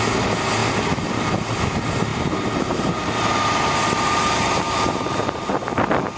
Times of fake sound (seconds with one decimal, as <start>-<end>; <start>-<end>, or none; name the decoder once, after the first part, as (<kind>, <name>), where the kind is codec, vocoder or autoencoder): 2.1-5.8 (vocoder, BigVGAN v2)